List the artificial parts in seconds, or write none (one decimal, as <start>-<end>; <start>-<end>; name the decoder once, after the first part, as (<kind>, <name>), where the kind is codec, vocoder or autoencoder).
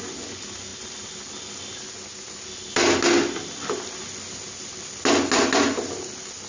none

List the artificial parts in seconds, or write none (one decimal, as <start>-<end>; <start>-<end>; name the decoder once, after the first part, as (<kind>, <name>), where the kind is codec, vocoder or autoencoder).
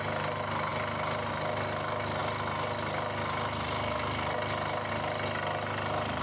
none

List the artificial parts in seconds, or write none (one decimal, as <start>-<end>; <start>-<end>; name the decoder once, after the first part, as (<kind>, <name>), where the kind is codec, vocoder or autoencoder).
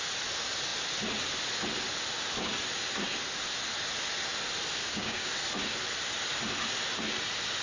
4.8-5.3 (codec, DAC)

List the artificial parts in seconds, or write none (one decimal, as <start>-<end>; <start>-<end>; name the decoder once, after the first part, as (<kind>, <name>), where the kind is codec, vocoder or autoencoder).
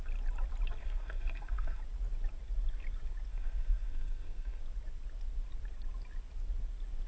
0.8-1.8 (codec, SNAC); 3.3-4.6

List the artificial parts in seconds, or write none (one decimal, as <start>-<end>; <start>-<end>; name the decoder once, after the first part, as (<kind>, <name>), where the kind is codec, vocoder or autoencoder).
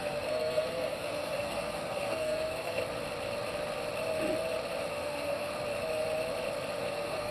0.0-2.8 (codec, SNAC); 4.9-5.5; 6.8-7.3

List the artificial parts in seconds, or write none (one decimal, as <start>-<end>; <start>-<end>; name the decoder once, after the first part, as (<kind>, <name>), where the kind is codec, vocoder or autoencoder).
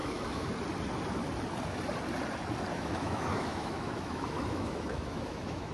0.0-0.5 (autoencoder, DAC-VAE); 2.7-5.7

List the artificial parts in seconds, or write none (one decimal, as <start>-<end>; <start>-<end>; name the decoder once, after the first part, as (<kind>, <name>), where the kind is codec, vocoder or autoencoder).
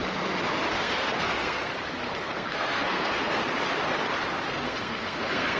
0.7-1.7 (codec, SNAC); 2.2-3.4; 4.5-5.6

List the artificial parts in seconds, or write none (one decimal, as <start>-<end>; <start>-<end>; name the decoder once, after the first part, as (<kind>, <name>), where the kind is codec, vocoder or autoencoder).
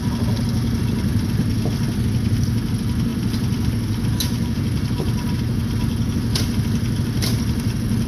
none